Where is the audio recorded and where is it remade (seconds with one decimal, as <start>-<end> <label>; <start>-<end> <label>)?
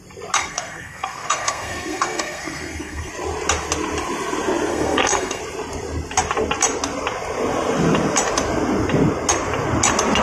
0.0-0.4 recorded; 0.4-3.1 remade; 3.1-4.7 recorded; 4.7-5.4 remade; 5.4-10.2 recorded